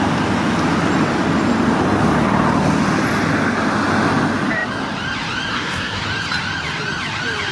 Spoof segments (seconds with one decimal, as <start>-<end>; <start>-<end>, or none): 5.5-6.0